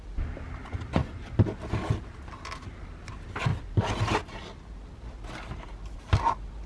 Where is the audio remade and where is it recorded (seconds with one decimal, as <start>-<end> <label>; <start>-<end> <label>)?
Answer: 0.0-1.0 remade; 1.0-3.0 recorded; 3.0-3.5 remade; 3.5-5.3 recorded; 5.3-6.7 remade